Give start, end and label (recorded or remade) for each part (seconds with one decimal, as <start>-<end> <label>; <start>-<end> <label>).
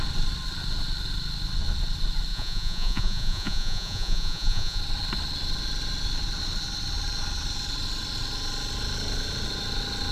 0.0-2.3 recorded; 2.3-4.8 remade; 4.8-10.1 recorded